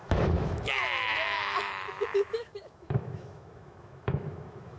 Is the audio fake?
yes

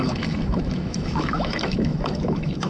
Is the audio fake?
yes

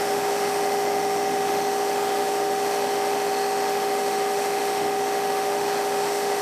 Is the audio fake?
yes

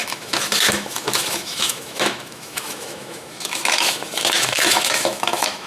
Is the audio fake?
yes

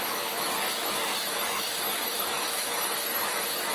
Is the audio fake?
yes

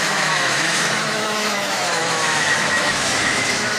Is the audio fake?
yes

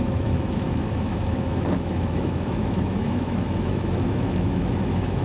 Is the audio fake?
yes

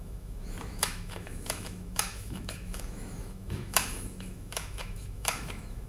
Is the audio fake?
yes